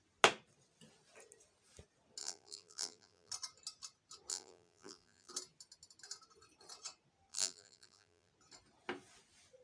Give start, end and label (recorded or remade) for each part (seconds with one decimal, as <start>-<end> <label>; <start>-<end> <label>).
0.0-2.2 recorded; 2.2-3.3 remade; 3.3-4.3 recorded; 4.3-5.3 remade; 5.3-7.3 recorded; 7.3-8.3 remade; 8.3-9.6 recorded